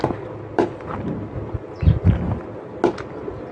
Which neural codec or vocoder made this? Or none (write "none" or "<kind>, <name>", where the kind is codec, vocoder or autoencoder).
none